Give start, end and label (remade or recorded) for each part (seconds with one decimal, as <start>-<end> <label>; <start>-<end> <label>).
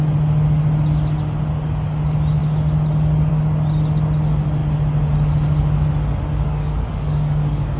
0.0-6.3 recorded; 6.3-7.8 remade